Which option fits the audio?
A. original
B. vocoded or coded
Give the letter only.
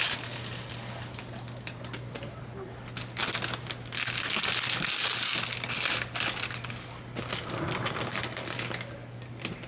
A